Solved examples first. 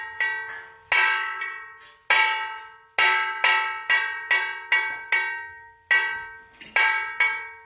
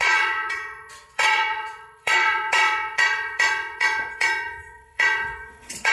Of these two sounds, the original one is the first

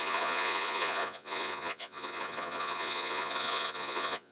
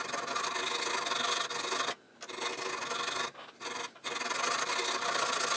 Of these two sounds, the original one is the second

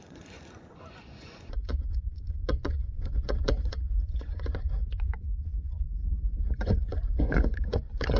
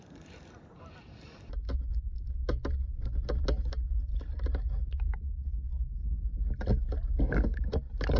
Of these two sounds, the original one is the second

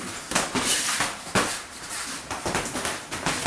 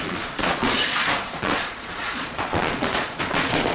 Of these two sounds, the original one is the first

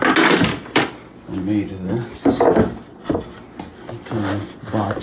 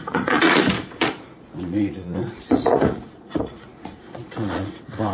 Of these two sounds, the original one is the first